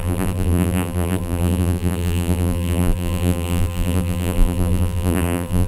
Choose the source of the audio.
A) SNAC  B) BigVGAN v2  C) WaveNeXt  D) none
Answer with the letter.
B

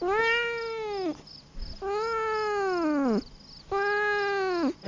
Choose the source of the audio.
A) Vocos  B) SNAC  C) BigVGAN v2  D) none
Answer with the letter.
D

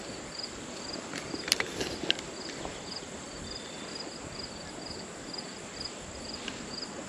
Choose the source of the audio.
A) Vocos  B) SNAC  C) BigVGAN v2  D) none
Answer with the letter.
C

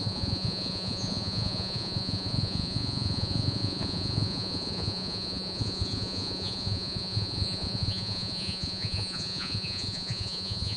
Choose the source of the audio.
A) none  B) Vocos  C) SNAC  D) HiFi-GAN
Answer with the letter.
B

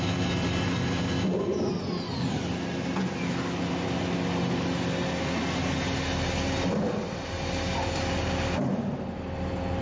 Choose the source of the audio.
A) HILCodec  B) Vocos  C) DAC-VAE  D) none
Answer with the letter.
D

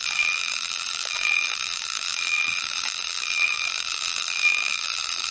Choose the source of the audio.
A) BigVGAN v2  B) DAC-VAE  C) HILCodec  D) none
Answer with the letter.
A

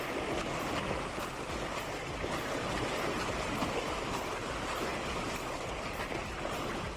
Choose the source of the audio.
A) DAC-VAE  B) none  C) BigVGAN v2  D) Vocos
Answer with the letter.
B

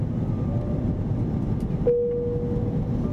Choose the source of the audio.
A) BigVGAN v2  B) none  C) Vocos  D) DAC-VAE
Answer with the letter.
B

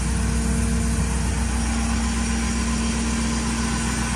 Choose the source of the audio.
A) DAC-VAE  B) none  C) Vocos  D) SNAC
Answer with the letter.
B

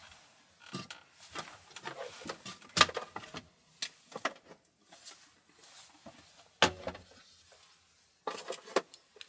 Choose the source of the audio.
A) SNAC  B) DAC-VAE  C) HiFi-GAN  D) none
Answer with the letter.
D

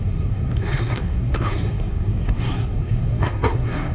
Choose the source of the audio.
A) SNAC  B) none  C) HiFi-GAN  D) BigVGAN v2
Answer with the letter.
A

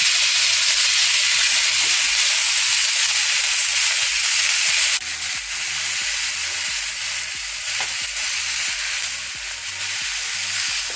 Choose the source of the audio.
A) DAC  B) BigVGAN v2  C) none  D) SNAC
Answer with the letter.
C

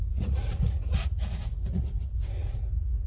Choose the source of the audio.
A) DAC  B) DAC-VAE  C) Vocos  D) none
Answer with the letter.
C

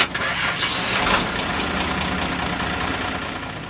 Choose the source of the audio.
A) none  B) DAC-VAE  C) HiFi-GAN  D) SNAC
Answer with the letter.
A